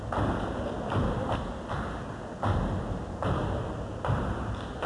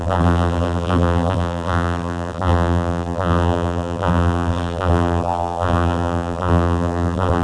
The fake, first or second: second